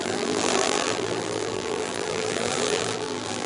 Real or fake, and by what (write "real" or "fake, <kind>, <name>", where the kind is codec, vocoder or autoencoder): fake, vocoder, BigVGAN v2